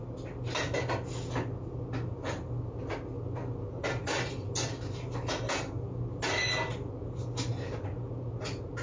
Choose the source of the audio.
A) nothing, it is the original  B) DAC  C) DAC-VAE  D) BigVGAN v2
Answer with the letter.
A